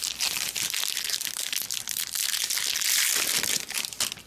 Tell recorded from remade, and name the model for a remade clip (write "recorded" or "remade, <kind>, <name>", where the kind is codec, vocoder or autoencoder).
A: recorded